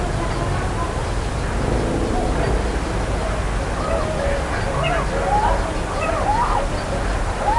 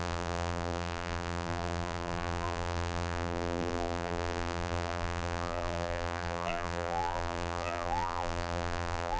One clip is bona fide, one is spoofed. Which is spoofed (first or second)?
second